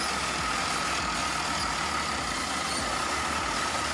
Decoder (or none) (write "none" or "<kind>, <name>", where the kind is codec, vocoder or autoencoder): none